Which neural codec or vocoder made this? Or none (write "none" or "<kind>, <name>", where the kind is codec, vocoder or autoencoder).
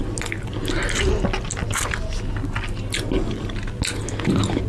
none